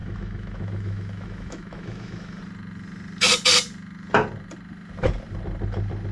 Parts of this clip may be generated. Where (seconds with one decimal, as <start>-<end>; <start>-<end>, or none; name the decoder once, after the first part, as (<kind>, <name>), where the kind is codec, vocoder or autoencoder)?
0.0-2.4 (autoencoder, DAC-VAE)